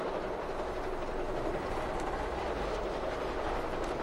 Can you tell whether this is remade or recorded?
recorded